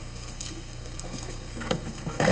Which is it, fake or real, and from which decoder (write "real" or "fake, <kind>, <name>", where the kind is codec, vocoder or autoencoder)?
fake, codec, SNAC